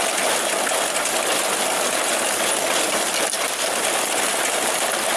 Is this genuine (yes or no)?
yes